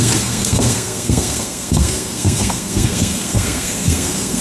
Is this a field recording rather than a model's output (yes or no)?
no